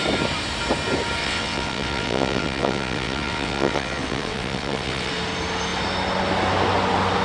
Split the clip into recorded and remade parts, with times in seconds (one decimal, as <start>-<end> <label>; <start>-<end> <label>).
0.0-1.2 recorded; 1.2-5.1 remade; 5.1-7.2 recorded